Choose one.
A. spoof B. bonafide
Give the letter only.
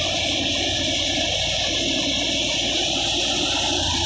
A